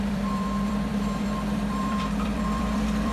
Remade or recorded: remade